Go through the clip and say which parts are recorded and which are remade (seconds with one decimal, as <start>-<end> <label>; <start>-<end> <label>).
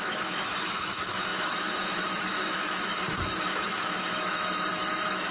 0.0-5.3 remade